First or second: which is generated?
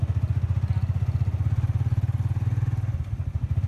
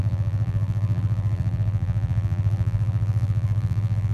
second